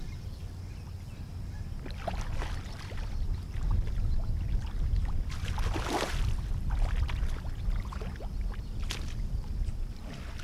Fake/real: real